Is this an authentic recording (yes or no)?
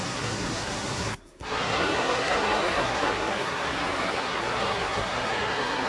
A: no